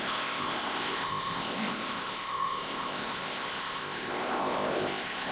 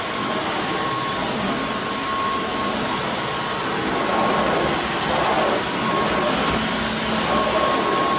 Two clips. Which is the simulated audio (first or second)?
first